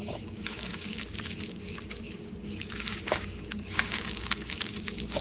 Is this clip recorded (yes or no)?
no